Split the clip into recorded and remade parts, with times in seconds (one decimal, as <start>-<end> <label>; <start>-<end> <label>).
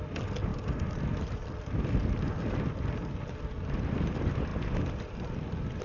0.0-5.8 recorded